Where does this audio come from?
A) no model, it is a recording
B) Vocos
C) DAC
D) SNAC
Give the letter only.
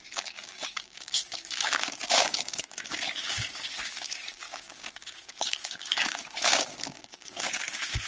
C